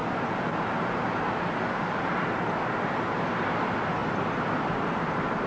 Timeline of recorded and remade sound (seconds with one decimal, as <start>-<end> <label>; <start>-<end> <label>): 0.0-5.5 recorded